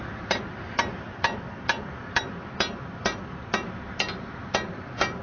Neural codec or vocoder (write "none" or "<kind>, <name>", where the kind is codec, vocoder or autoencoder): vocoder, BigVGAN v2